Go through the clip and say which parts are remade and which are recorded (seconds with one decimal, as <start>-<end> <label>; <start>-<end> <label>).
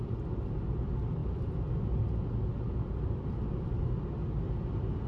0.0-5.1 recorded